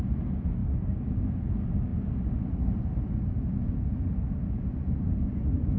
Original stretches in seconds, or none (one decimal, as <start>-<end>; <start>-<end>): 0.0-5.8